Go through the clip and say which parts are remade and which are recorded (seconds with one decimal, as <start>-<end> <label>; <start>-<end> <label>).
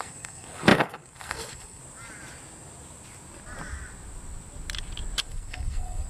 0.0-1.8 remade; 1.8-5.2 recorded; 5.2-6.1 remade